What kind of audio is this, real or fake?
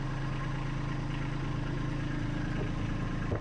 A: real